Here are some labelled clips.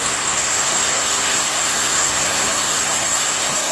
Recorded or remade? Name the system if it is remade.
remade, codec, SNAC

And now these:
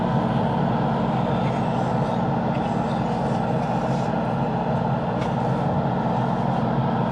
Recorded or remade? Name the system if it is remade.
recorded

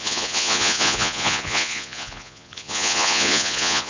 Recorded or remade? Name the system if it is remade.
remade, vocoder, Vocos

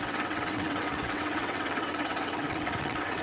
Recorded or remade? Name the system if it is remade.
remade, vocoder, WaveNeXt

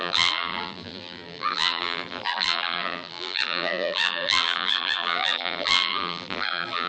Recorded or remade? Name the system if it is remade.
remade, vocoder, BigVGAN v2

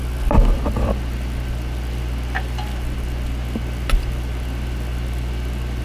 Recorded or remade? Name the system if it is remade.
recorded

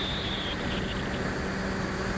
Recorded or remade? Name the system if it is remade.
recorded